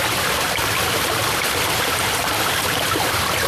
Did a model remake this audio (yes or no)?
no